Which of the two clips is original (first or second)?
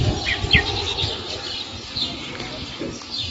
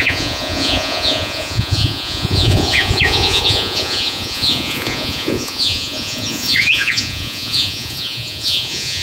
first